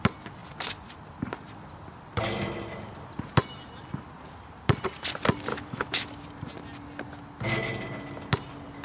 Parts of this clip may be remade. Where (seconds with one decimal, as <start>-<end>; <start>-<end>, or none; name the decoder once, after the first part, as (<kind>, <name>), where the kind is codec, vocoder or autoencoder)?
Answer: 5.5-6.2 (autoencoder, DAC-VAE)